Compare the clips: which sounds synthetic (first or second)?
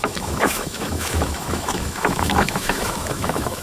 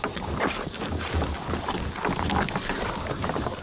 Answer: first